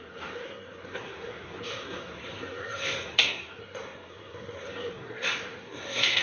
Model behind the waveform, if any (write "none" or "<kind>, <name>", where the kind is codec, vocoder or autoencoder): codec, SNAC